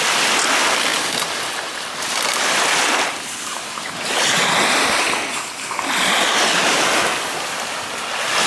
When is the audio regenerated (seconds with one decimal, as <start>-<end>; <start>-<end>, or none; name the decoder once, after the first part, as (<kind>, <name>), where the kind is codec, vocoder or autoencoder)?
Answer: none